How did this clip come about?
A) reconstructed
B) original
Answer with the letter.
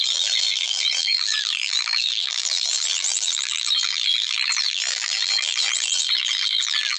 A